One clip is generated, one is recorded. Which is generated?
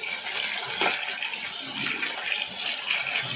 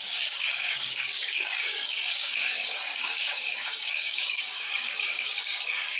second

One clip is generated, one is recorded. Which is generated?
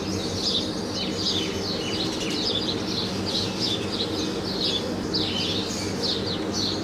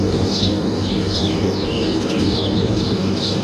second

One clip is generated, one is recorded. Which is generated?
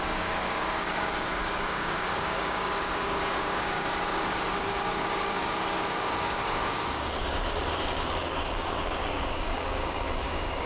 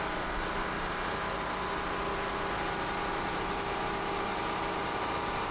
first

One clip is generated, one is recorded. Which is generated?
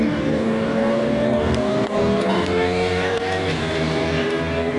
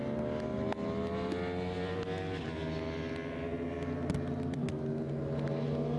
first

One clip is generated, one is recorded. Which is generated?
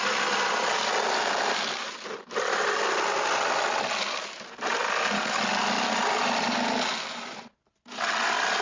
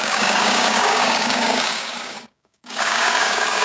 second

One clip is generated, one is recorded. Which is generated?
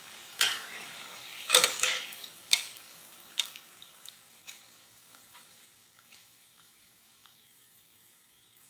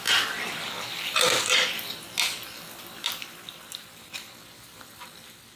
first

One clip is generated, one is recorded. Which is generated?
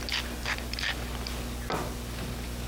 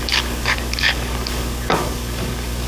second